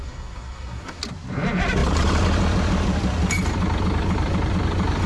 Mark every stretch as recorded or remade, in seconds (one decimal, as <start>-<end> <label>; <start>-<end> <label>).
0.0-1.0 remade; 1.0-5.1 recorded